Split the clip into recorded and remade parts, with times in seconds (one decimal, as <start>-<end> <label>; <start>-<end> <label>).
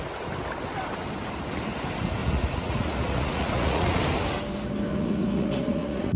0.0-2.2 recorded; 2.2-4.0 remade; 4.0-4.9 recorded; 4.9-6.2 remade